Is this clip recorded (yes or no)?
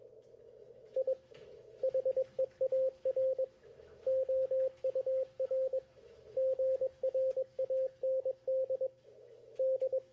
no